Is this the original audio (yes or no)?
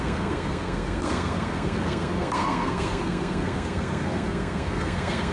no